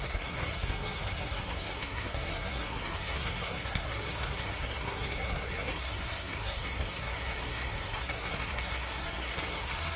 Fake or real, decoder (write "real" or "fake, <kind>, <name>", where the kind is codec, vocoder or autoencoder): fake, codec, SNAC